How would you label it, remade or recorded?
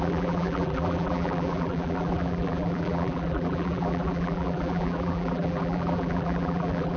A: remade